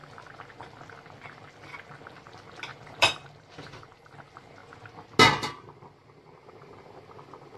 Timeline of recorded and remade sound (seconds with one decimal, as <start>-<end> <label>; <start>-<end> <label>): 0.0-2.7 recorded; 2.7-4.1 remade; 4.1-7.6 recorded